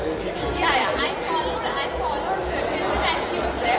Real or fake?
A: real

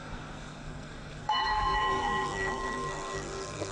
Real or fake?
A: fake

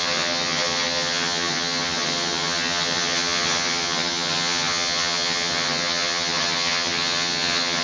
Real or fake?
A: fake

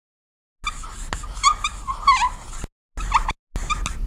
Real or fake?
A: real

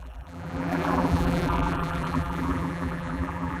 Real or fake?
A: fake